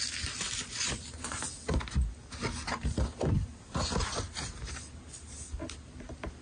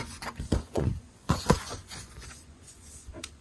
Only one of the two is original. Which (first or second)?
first